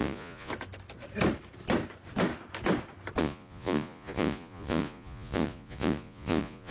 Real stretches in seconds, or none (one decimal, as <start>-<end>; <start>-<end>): 0.5-3.2